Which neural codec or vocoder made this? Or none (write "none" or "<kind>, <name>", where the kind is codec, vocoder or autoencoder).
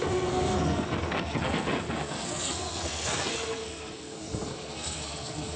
codec, SNAC